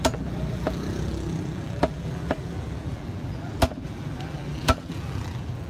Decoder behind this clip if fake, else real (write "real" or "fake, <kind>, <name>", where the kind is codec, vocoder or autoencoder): fake, vocoder, BigVGAN v2